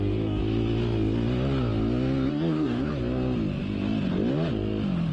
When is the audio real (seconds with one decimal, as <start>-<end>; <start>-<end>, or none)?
0.4-2.3; 2.9-5.1